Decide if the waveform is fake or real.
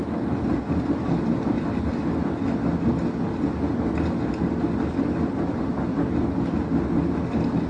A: real